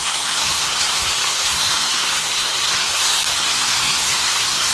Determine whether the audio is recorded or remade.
remade